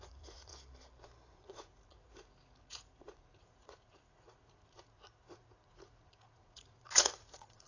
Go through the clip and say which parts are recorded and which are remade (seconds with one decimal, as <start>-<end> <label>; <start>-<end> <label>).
0.0-0.5 remade; 0.5-1.3 recorded; 1.3-7.7 remade